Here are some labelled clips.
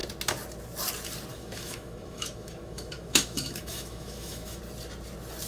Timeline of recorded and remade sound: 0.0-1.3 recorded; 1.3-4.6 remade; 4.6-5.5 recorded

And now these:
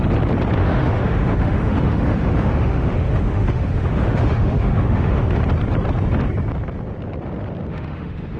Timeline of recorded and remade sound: 0.0-0.6 recorded; 0.6-5.4 remade; 5.4-7.7 recorded; 7.7-8.4 remade

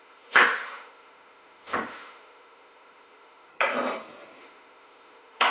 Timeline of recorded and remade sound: 0.0-3.5 remade; 3.5-4.4 recorded; 4.4-5.5 remade

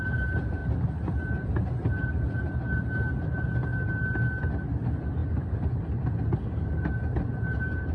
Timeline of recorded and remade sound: 0.0-7.9 recorded

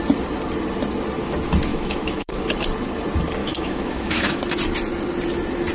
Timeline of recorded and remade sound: 0.0-1.7 recorded; 1.7-2.4 remade; 2.4-3.4 recorded; 3.4-4.4 remade; 4.4-5.7 recorded

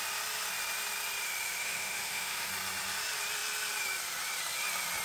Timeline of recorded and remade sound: 0.0-1.6 recorded; 1.6-2.5 remade; 2.5-5.0 recorded

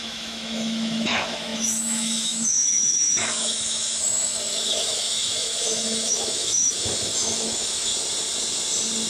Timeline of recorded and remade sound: 0.0-7.9 remade; 7.9-9.1 recorded